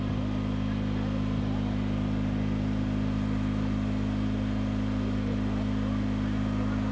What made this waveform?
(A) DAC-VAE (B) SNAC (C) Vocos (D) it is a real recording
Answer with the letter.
D